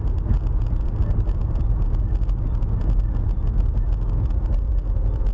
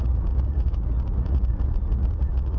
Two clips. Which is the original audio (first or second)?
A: first